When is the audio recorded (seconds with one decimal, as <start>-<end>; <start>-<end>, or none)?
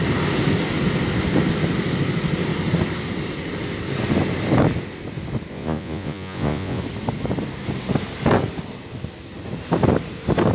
0.0-5.5; 6.8-10.5